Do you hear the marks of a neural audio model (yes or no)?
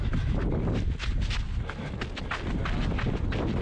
no